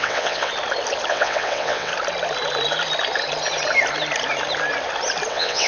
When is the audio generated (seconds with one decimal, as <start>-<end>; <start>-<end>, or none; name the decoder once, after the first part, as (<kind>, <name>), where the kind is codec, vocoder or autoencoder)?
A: 0.0-0.5 (vocoder, WaveNeXt); 1.1-1.9; 5.3-5.7